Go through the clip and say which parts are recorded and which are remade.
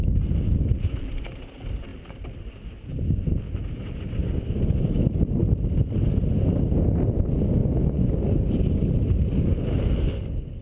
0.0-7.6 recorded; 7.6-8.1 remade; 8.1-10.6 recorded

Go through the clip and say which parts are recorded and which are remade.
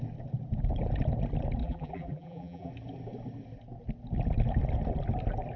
0.0-1.6 recorded; 1.6-2.7 remade; 2.7-5.6 recorded